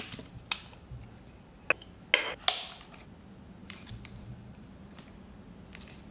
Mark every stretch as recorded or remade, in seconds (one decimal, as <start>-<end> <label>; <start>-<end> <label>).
0.0-3.6 recorded; 3.6-5.0 remade; 5.0-6.1 recorded

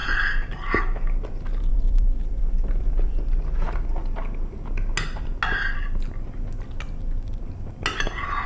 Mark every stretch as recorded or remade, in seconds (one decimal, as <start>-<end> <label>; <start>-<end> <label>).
0.0-1.7 recorded; 1.7-3.4 remade; 3.4-8.5 recorded

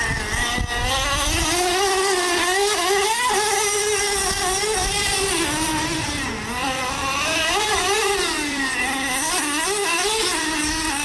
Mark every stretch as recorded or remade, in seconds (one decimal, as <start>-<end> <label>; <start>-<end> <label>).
0.0-4.8 recorded; 4.8-5.4 remade; 5.4-6.6 recorded; 6.6-9.4 remade; 9.4-9.9 recorded; 9.9-10.6 remade; 10.6-11.0 recorded